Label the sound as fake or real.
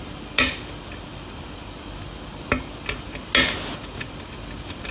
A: real